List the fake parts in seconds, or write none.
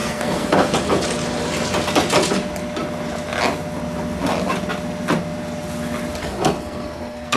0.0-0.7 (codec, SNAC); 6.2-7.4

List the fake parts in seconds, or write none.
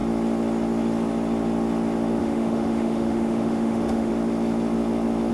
2.2-4.1 (autoencoder, DAC-VAE)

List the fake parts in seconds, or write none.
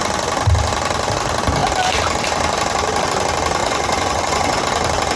3.6-4.6 (vocoder, Vocos)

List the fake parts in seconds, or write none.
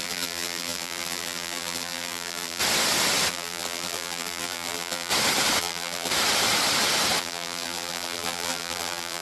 0.0-2.6 (vocoder, BigVGAN v2); 3.3-5.1; 5.6-6.1; 7.2-9.2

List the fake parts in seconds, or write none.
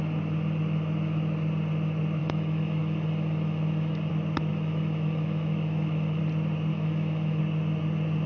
2.2-4.1 (autoencoder, DAC-VAE); 4.5-6.2; 6.7-7.4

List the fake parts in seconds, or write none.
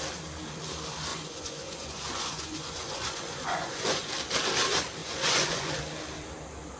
1.1-4.1 (vocoder, Vocos); 5.0-5.7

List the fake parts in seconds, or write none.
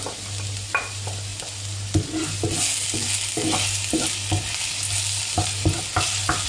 none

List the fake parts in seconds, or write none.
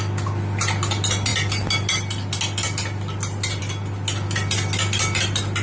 none